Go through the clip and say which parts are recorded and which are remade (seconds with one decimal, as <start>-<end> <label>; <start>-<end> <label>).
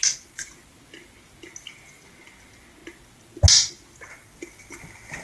0.0-5.2 recorded